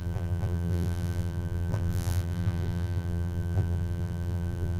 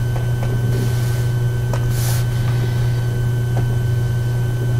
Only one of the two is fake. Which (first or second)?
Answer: first